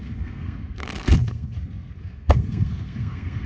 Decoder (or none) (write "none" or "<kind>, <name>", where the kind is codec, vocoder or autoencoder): codec, SNAC